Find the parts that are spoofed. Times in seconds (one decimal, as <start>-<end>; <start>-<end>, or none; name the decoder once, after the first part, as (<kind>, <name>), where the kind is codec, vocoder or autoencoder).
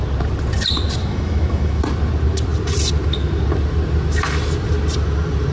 1.0-1.8 (autoencoder, DAC-VAE)